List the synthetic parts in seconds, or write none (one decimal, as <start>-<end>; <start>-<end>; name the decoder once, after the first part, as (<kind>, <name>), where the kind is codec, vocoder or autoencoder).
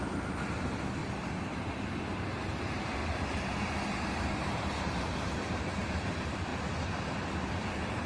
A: 0.0-1.0 (vocoder, BigVGAN v2); 2.4-3.0; 4.3-6.5